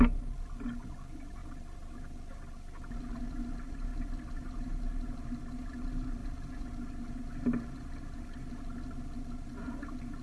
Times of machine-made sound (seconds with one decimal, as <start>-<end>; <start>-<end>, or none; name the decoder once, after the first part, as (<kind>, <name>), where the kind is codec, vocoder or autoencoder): none